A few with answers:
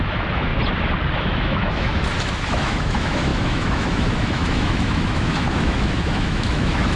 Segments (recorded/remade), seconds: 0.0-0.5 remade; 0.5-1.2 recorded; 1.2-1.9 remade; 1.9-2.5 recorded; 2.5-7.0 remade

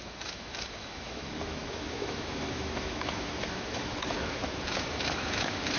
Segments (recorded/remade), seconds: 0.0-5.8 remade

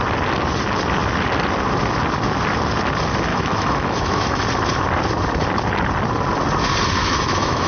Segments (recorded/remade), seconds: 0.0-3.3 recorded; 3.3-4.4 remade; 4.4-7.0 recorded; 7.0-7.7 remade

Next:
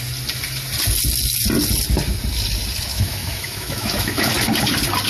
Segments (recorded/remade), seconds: 0.0-2.9 recorded; 2.9-4.3 remade; 4.3-5.1 recorded

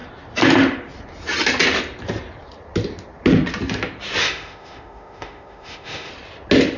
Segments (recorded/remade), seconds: 0.0-4.2 recorded; 4.2-6.1 remade; 6.1-6.8 recorded

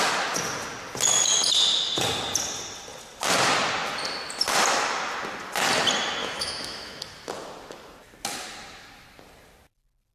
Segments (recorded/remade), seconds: 0.0-6.2 recorded; 6.2-7.0 remade; 7.0-10.1 recorded

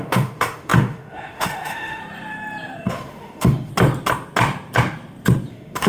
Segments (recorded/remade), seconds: 0.0-2.0 remade; 2.0-2.9 recorded; 2.9-3.7 remade; 3.7-5.5 recorded; 5.5-5.9 remade

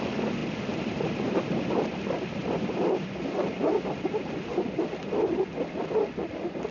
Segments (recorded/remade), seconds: 0.0-6.7 recorded